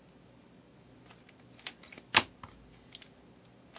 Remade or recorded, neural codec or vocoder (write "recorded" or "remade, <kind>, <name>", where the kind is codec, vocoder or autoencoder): recorded